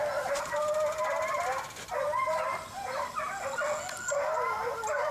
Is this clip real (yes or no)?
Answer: yes